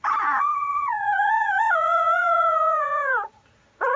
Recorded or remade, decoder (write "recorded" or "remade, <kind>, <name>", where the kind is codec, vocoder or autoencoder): remade, vocoder, Vocos